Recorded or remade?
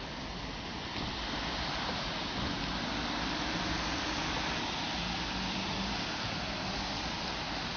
recorded